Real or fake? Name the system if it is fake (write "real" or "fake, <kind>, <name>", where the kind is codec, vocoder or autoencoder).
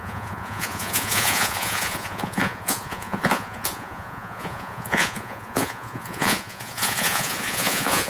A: fake, vocoder, Vocos